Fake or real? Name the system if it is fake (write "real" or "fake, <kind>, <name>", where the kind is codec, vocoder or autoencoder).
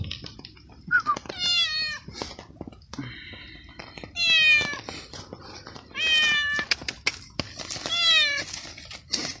real